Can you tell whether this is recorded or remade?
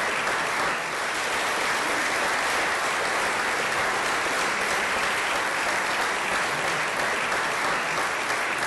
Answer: recorded